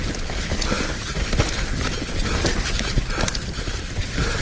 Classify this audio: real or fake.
real